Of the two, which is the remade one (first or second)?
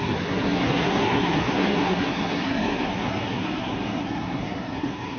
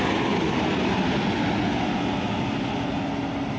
first